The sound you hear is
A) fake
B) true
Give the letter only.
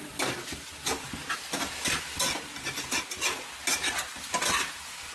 B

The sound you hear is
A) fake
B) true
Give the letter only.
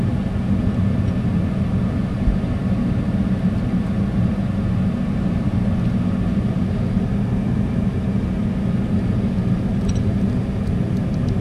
B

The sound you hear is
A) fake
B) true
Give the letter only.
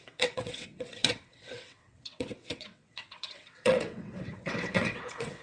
A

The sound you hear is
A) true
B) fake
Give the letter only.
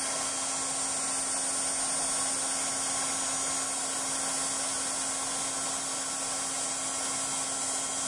A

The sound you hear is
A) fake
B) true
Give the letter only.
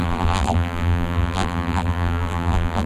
A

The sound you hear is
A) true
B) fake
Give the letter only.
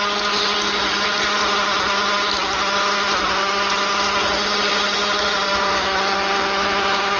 A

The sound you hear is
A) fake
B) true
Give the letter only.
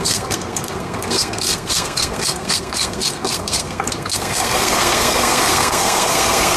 A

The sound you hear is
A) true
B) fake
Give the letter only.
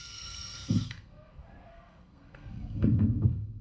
B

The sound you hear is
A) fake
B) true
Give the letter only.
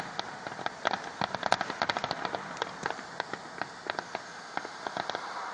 B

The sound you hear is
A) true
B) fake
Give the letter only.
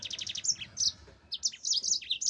A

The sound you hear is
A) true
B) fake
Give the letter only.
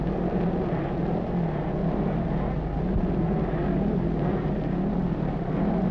A